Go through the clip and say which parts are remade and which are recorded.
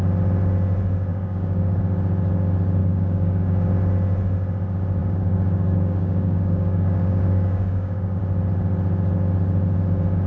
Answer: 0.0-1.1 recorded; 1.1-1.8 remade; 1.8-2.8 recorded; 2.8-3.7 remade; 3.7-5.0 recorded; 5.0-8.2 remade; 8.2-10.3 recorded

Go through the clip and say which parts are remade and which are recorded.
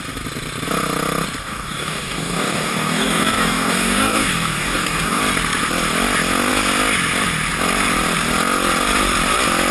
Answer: 0.0-1.4 recorded; 1.4-5.2 remade; 5.2-9.7 recorded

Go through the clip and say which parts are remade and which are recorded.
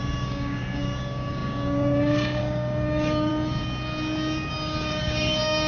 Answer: 0.0-3.3 remade; 3.3-4.5 recorded; 4.5-5.7 remade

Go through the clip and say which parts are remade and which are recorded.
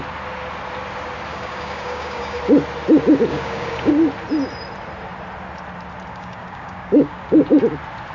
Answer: 0.0-1.3 recorded; 1.3-2.4 remade; 2.4-3.3 recorded; 3.3-3.9 remade; 3.9-6.1 recorded; 6.1-7.6 remade; 7.6-8.1 recorded